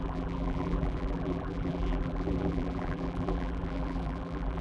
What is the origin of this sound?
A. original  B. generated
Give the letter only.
B